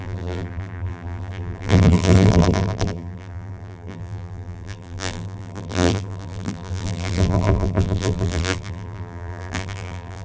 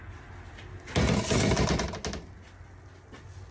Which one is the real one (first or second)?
second